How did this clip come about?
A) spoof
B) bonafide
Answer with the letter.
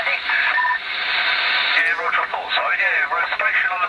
B